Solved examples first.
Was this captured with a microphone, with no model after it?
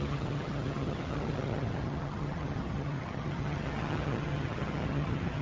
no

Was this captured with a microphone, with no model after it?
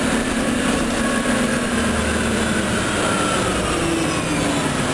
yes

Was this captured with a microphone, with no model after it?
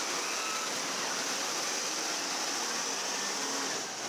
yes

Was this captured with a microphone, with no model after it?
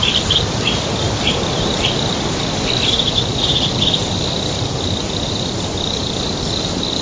yes